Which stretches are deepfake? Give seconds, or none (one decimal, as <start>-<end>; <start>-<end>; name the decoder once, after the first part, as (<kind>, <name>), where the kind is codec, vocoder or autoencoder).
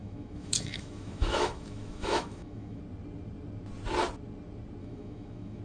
0.0-2.8 (autoencoder, DAC-VAE); 4.8-5.6